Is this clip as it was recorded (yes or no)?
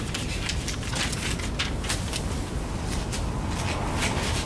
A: yes